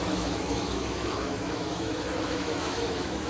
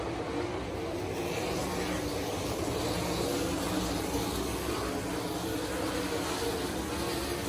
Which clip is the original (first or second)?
second